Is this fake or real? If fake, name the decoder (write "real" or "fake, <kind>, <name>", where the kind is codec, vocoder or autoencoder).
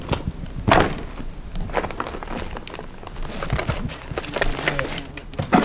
real